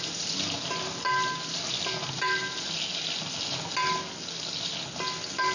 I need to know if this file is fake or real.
real